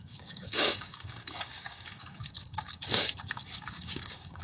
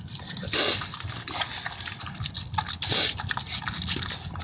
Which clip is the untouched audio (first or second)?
second